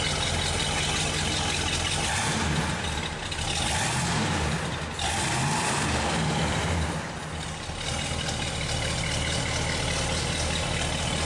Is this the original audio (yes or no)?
yes